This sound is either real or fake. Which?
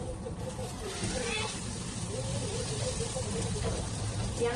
real